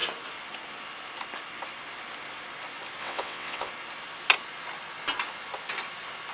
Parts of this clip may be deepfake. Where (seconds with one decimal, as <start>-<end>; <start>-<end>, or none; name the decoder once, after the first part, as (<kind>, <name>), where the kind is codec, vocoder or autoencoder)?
3.0-3.7 (vocoder, WaveNeXt)